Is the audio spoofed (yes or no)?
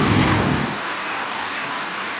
yes